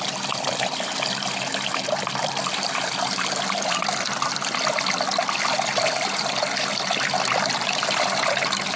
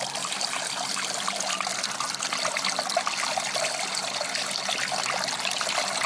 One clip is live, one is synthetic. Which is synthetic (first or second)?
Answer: first